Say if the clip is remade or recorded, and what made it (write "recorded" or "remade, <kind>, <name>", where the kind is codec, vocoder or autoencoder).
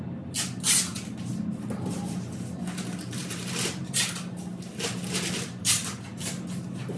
recorded